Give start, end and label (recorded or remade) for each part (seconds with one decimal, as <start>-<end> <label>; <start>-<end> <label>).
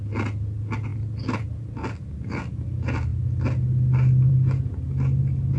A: 0.0-5.6 recorded